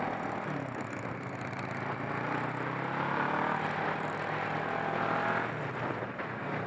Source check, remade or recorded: recorded